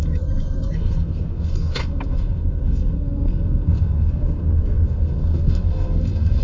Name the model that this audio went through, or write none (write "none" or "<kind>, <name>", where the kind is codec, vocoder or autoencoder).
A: codec, SNAC